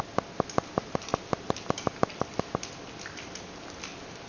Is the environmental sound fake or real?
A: real